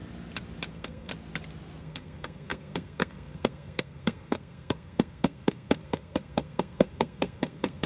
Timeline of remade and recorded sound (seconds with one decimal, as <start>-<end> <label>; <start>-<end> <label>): 0.0-0.7 recorded; 0.7-1.1 remade; 1.1-1.8 recorded; 1.8-7.9 remade